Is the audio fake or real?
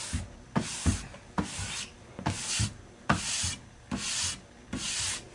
real